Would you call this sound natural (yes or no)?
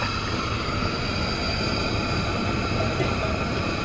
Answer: yes